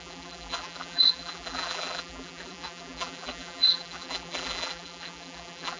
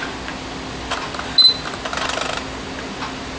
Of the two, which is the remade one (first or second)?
first